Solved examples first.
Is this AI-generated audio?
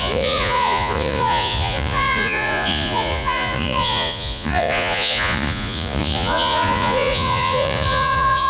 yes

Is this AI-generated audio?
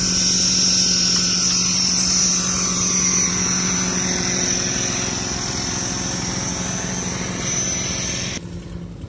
no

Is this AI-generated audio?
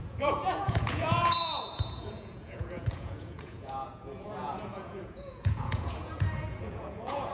yes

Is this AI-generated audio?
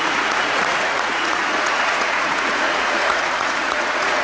yes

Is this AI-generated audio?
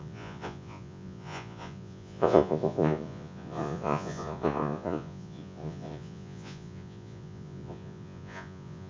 yes